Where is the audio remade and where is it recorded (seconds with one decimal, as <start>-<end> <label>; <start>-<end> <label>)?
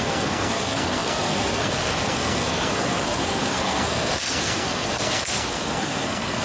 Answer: 0.0-6.4 remade